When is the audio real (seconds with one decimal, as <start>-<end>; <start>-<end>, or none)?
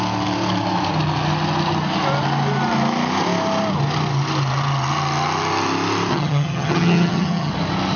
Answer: 0.0-6.1; 7.5-8.0